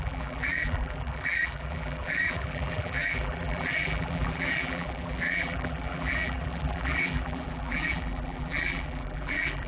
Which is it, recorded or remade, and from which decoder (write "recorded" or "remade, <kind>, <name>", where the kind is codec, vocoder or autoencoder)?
remade, vocoder, BigVGAN v2